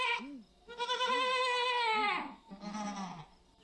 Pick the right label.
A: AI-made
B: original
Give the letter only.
B